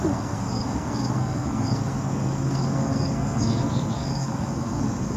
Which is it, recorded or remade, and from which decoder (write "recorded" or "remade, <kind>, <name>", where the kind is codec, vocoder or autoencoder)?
remade, codec, SNAC